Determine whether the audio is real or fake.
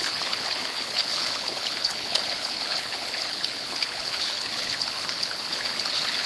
fake